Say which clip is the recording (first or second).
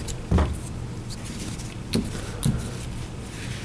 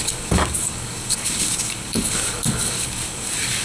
first